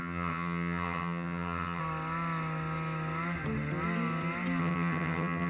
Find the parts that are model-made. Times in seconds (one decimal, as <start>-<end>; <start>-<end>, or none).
0.0-1.8; 4.6-5.5